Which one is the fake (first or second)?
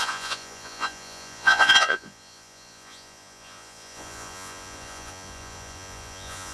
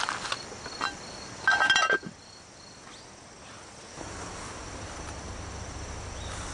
first